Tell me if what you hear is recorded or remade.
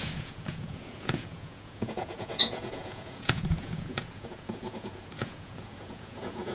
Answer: remade